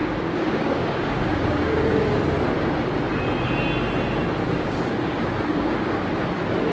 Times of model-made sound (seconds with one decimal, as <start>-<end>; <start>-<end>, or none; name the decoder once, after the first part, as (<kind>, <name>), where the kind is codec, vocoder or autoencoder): 0.0-2.2 (codec, DAC); 4.4-6.1